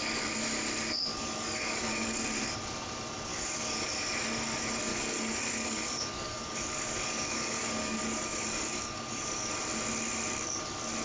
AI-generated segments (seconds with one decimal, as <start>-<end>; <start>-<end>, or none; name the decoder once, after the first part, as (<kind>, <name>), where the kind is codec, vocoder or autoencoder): 1.1-2.2 (codec, DAC); 3.3-4.0; 4.9-9.5